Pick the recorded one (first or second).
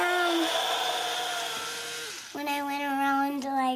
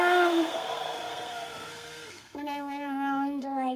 first